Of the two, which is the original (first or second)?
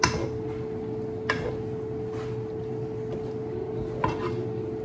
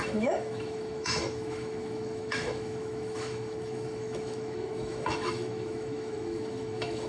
first